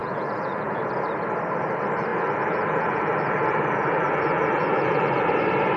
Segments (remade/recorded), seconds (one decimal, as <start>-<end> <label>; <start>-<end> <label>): 0.0-0.8 remade; 0.8-2.1 recorded; 2.1-5.3 remade; 5.3-5.8 recorded